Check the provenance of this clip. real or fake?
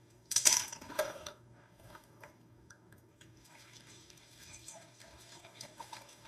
fake